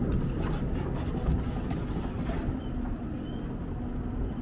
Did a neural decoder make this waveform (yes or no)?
no